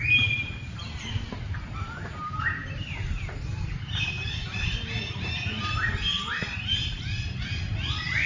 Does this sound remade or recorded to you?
remade